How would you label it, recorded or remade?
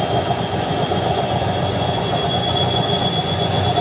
remade